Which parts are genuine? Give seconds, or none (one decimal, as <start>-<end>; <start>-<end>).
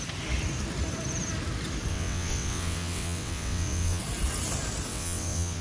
0.0-1.9; 4.0-4.9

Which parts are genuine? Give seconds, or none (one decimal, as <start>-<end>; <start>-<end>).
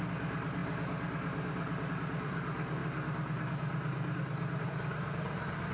0.6-1.9; 2.8-4.6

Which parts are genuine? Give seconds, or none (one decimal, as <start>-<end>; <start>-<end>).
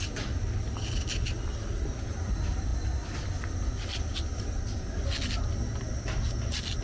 0.0-6.8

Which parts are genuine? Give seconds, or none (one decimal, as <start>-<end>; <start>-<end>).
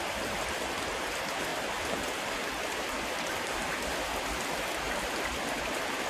0.0-6.1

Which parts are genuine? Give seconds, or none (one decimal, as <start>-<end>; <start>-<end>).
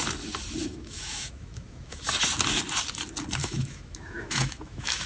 0.0-0.6; 2.0-3.4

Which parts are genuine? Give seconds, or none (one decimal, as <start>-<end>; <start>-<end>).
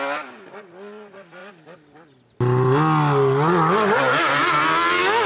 0.0-5.3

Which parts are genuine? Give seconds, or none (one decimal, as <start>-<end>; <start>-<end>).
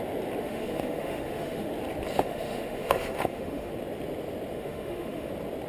0.0-0.4; 1.7-2.1; 3.7-4.5; 5.3-5.7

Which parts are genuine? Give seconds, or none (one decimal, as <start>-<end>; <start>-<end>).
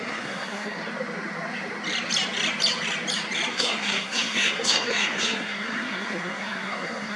0.8-3.5